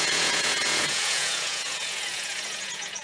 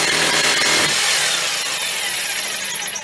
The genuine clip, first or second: second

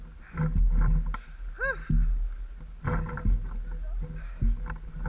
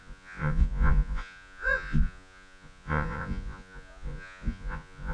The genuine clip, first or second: first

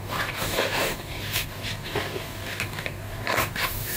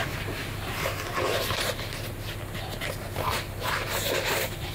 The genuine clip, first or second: second